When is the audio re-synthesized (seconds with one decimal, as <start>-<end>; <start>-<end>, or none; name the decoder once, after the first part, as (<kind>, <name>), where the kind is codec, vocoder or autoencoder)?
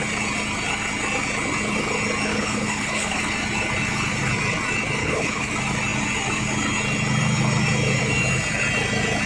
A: 2.3-3.2 (codec, HILCodec); 5.0-5.5